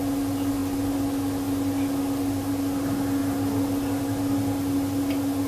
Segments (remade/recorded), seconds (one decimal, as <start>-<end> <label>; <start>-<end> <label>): 0.0-5.5 recorded